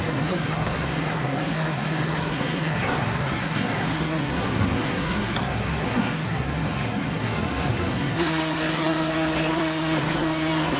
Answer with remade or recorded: remade